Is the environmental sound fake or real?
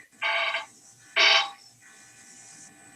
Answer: real